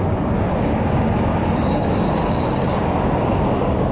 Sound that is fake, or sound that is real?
fake